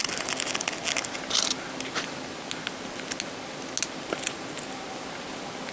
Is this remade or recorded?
recorded